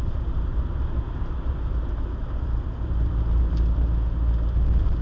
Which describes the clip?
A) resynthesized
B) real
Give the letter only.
B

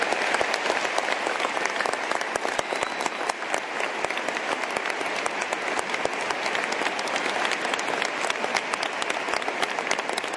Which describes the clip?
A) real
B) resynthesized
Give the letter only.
A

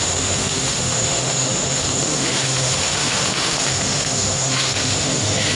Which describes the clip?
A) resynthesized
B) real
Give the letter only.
A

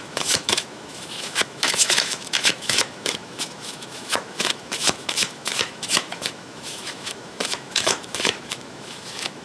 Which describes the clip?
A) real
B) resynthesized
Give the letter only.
B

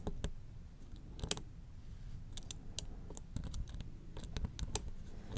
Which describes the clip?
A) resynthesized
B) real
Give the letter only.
B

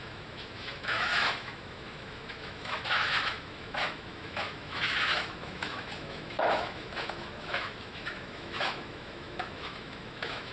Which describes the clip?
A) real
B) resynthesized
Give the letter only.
B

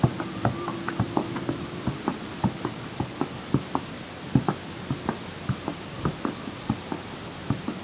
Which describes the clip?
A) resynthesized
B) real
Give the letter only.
B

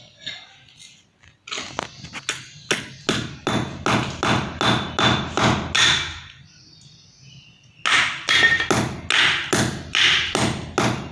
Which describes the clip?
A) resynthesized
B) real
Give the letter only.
B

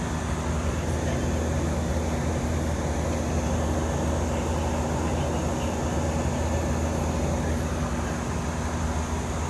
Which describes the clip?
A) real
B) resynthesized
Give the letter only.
A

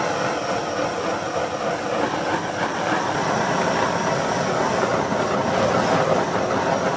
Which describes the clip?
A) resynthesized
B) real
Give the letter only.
B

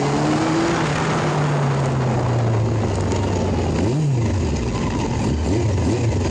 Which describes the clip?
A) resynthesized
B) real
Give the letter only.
B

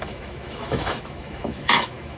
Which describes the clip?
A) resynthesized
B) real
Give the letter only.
A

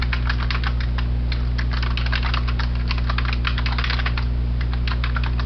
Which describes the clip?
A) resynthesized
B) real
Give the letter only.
B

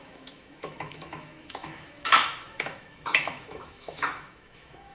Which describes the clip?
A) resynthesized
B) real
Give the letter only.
A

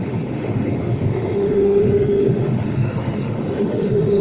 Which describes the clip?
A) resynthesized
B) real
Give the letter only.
A